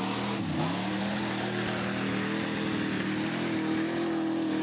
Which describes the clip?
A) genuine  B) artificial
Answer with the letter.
A